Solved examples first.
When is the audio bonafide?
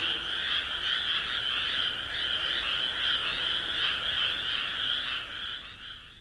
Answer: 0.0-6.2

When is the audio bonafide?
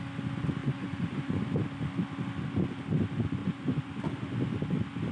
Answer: 0.0-0.6; 1.4-3.4; 3.9-5.1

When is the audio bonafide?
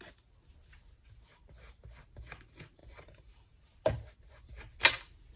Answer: 0.0-2.8; 3.6-5.4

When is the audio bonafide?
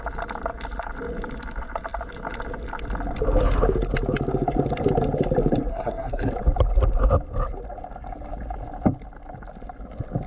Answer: 0.0-5.7; 6.3-10.3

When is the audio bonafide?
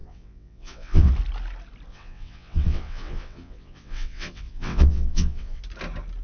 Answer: 1.1-1.9; 5.6-6.2